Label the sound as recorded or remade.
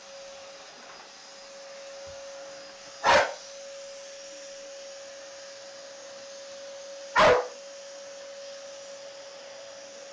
recorded